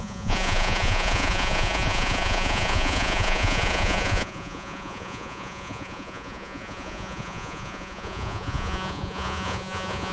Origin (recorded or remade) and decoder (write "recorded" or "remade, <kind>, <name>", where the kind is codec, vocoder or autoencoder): remade, vocoder, Vocos